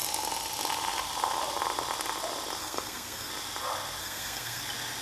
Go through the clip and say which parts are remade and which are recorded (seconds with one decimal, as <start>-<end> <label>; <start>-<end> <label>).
0.0-2.6 recorded; 2.6-3.3 remade; 3.3-4.0 recorded; 4.0-4.6 remade; 4.6-5.0 recorded